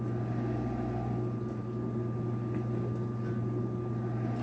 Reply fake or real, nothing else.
real